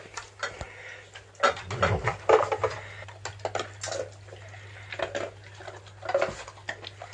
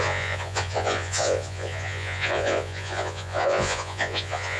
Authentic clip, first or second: first